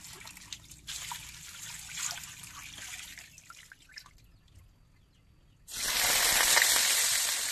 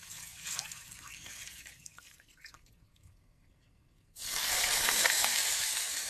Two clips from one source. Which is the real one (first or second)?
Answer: first